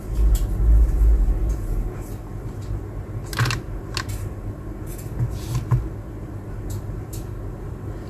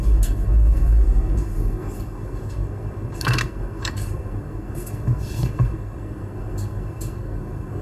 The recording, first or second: first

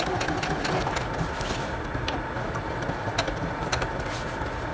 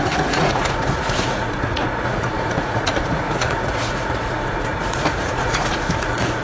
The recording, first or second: first